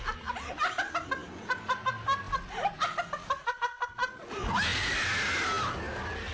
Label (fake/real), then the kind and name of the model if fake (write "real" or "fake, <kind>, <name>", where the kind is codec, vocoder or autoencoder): real